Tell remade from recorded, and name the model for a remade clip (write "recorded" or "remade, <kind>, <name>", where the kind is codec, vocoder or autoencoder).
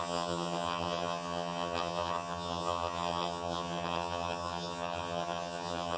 remade, vocoder, HiFi-GAN